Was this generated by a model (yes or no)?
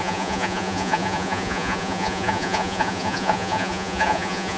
yes